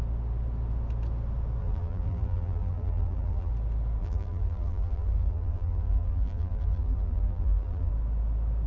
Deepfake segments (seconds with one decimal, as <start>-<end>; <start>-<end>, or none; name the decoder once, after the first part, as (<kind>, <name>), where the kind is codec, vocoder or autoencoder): 1.6-3.5 (vocoder, BigVGAN v2); 4.0-7.9